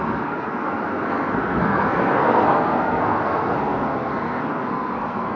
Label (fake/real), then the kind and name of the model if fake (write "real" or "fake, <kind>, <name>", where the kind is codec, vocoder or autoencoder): fake, codec, SNAC